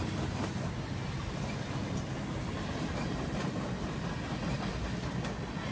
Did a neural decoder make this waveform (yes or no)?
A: no